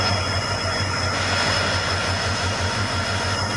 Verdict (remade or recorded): remade